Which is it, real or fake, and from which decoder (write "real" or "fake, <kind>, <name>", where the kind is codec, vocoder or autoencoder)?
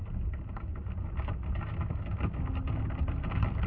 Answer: real